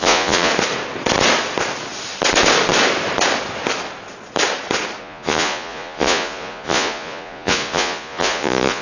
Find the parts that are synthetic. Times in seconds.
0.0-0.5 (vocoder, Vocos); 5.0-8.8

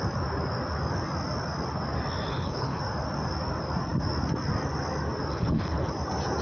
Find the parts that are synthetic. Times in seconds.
2.3-2.8 (codec, HILCodec); 5.3-5.9

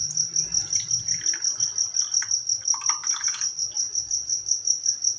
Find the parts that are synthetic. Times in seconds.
none